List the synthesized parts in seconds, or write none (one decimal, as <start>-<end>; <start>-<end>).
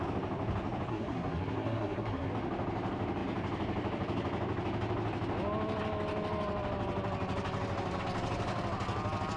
0.9-2.3